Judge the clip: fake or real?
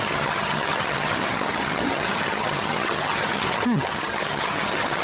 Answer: fake